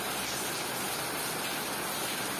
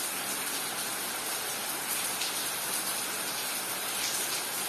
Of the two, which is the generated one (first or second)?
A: first